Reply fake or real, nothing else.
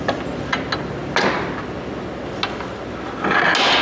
real